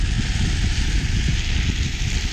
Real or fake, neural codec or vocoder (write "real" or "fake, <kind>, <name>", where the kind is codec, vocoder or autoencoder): real